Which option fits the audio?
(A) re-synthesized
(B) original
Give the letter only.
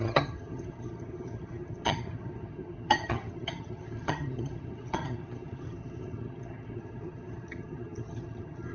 A